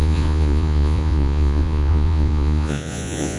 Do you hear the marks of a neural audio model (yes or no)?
yes